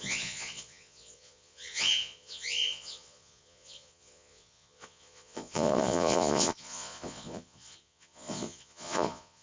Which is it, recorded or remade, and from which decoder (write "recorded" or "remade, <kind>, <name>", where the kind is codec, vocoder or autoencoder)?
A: remade, vocoder, Vocos